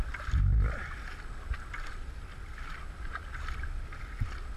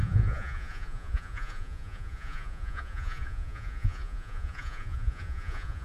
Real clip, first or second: first